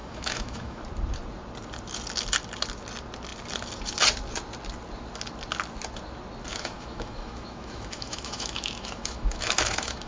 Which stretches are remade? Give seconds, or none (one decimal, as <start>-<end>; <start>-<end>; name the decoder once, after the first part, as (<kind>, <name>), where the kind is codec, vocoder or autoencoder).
0.0-0.8 (autoencoder, DAC-VAE); 6.5-10.1